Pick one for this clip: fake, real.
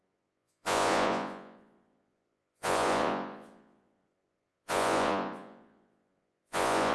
fake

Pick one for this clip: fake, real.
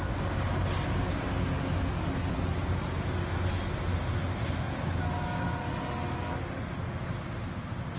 real